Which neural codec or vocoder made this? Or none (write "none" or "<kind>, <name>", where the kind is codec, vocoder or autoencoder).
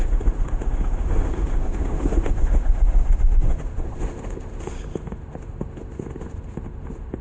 autoencoder, DAC-VAE